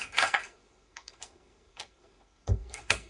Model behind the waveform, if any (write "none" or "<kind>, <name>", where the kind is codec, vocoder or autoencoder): codec, SNAC